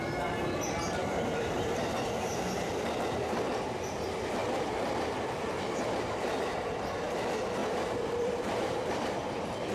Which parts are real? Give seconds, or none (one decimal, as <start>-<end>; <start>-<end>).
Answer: 0.0-1.0; 2.7-4.4; 6.7-7.6; 9.1-9.7